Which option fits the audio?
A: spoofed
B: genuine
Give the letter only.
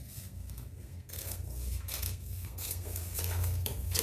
A